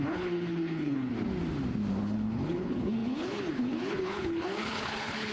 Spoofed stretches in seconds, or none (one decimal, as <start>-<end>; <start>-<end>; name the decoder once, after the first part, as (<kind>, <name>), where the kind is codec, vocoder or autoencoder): 0.0-1.1 (codec, HILCodec); 2.0-5.3